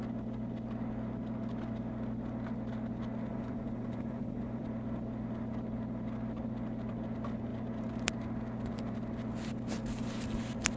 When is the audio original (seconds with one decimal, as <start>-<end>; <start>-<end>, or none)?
0.0-3.3; 4.6-10.8